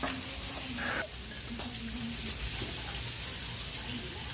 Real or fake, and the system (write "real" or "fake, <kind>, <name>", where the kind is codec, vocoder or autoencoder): real